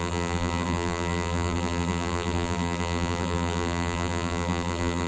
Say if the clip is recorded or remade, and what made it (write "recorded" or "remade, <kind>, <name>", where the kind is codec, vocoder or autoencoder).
remade, vocoder, BigVGAN v2